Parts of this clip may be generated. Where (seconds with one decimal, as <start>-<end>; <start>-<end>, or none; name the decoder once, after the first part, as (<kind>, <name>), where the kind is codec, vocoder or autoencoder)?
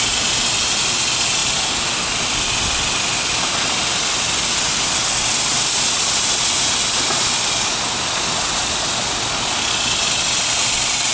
none